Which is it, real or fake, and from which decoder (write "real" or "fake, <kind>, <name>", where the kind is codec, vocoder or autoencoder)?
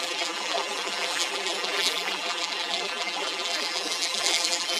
fake, vocoder, BigVGAN v2